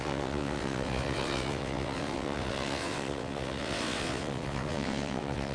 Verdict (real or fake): fake